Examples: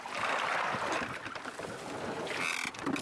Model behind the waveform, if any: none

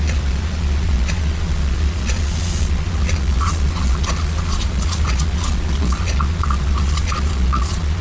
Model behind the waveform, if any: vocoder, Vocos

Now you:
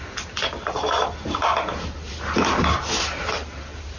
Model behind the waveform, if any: none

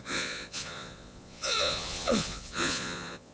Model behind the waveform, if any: vocoder, Vocos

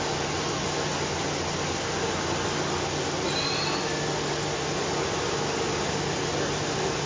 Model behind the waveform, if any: none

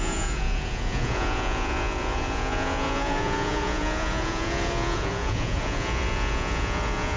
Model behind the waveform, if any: vocoder, Vocos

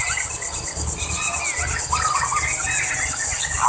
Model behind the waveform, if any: none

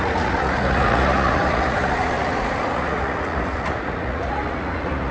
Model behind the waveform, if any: vocoder, Vocos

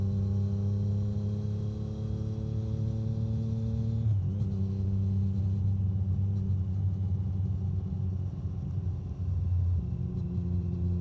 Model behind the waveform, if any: none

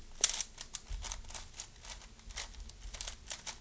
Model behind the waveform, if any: none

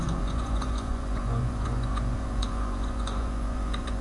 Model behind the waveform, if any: vocoder, Vocos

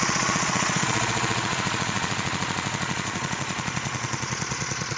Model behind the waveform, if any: vocoder, Vocos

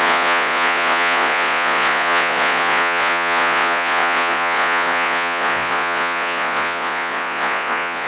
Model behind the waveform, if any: vocoder, Vocos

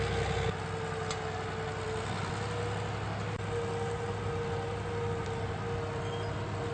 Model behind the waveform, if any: none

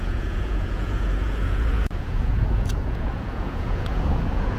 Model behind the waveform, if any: vocoder, Vocos